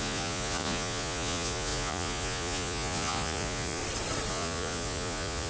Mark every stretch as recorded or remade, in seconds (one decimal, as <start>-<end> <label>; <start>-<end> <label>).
0.0-3.8 remade; 3.8-4.3 recorded; 4.3-5.5 remade